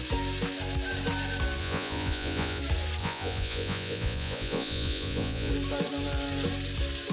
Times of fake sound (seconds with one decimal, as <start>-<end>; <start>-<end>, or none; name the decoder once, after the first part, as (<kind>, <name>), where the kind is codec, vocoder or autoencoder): 1.6-2.6 (vocoder, Vocos); 3.0-5.5